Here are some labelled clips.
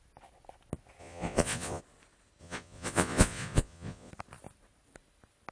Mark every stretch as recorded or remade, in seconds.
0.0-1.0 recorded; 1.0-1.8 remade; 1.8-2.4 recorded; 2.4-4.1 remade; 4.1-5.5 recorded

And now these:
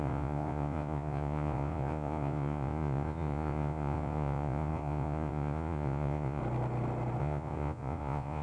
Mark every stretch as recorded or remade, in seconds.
0.0-6.4 remade; 6.4-7.2 recorded; 7.2-8.4 remade

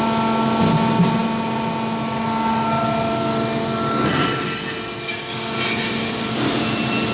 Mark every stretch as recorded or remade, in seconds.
0.0-7.1 recorded

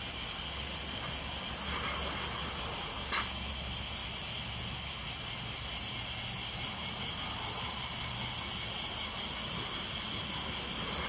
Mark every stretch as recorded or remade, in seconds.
0.0-11.1 recorded

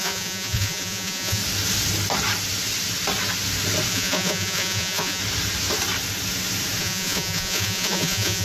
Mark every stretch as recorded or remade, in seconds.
0.0-1.4 remade; 1.4-3.9 recorded; 3.9-5.2 remade; 5.2-6.8 recorded; 6.8-8.4 remade

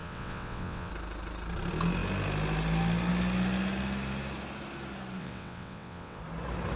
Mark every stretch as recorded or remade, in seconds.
0.0-0.9 remade; 0.9-5.2 recorded; 5.2-6.2 remade; 6.2-6.8 recorded

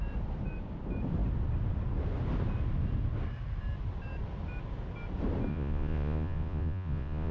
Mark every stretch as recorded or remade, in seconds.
0.0-5.5 recorded; 5.5-7.3 remade

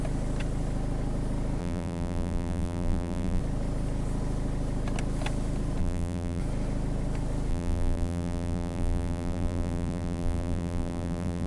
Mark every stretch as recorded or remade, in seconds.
0.0-1.6 recorded; 1.6-3.4 remade; 3.4-5.8 recorded; 5.8-6.4 remade; 6.4-7.5 recorded; 7.5-11.5 remade